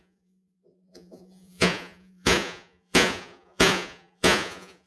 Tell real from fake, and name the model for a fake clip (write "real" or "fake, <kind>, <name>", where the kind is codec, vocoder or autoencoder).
fake, vocoder, Vocos